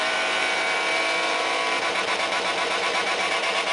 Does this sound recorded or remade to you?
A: remade